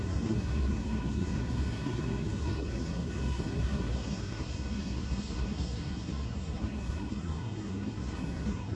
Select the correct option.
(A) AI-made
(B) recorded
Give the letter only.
A